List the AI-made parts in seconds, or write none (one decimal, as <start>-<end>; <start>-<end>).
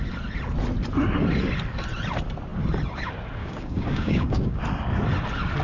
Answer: 3.4-4.6